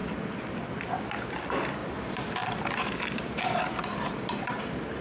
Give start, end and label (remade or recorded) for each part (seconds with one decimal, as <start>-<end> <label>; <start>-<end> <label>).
0.0-1.8 recorded; 1.8-2.6 remade; 2.6-3.9 recorded; 3.9-4.6 remade; 4.6-5.0 recorded